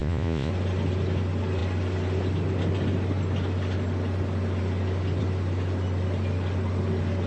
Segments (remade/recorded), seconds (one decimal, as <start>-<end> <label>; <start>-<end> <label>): 0.0-0.5 remade; 0.5-7.3 recorded